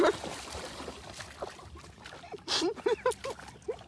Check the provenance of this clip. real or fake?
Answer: real